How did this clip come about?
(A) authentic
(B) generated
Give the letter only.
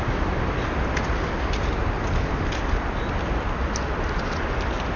A